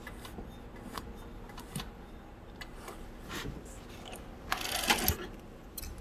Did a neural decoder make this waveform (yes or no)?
no